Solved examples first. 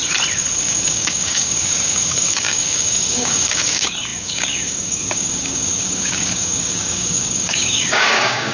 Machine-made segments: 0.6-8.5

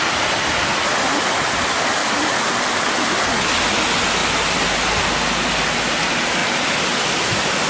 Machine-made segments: 2.0-3.1

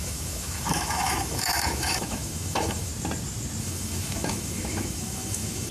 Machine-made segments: 0.0-2.9; 3.6-5.7

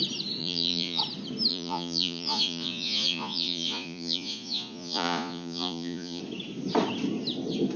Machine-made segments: 0.4-1.0; 1.5-6.2

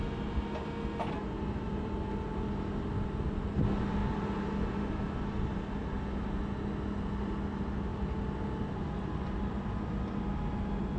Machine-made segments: none

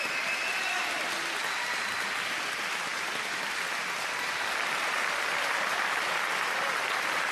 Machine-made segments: none

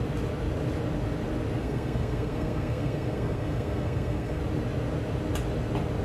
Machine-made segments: 1.6-4.4

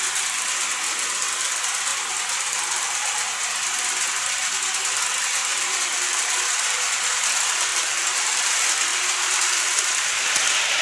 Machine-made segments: 5.5-6.8; 7.7-8.4; 8.9-10.3